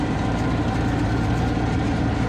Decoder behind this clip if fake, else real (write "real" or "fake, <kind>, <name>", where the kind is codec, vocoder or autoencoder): fake, vocoder, BigVGAN v2